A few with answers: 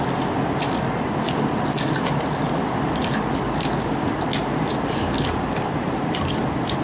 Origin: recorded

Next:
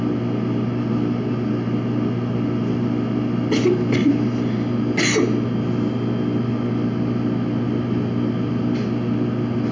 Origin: recorded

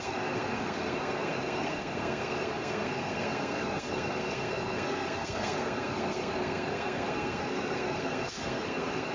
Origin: remade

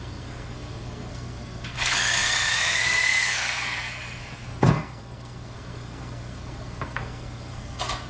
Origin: remade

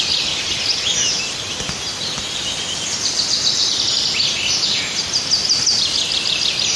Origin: recorded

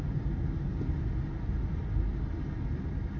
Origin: recorded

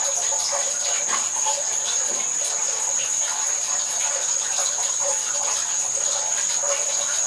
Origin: recorded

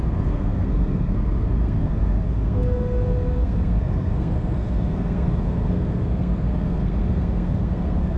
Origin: remade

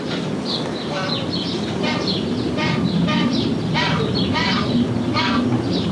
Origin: recorded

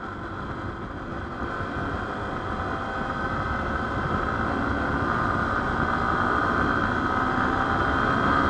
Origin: recorded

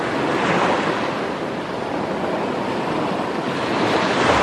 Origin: recorded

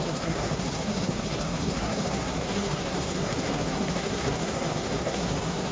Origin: remade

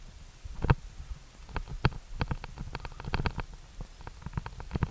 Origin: recorded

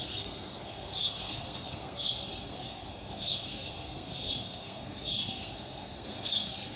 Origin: remade